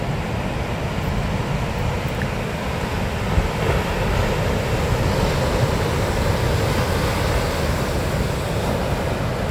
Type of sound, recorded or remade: recorded